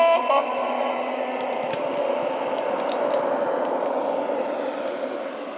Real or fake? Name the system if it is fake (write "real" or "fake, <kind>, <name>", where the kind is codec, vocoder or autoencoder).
fake, vocoder, BigVGAN v2